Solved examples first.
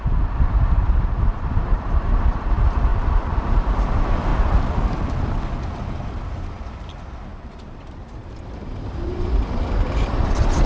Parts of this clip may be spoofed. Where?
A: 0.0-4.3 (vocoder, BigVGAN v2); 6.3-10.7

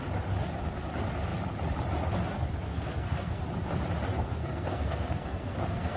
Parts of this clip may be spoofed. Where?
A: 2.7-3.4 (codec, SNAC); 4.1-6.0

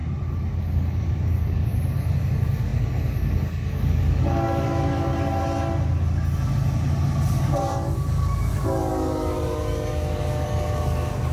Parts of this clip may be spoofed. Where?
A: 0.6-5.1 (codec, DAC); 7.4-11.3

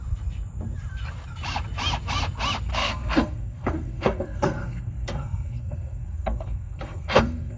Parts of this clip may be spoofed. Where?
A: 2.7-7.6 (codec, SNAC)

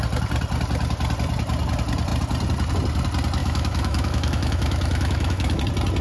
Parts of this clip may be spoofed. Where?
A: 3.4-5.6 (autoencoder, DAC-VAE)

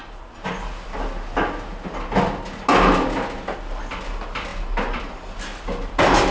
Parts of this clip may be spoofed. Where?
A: none

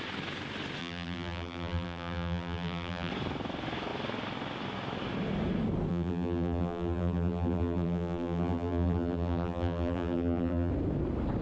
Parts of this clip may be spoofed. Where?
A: 0.8-3.1 (vocoder, BigVGAN v2); 5.9-10.7

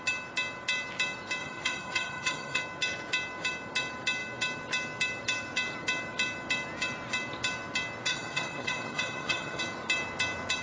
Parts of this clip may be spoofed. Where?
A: 1.4-2.6 (vocoder, HiFi-GAN); 8.1-9.6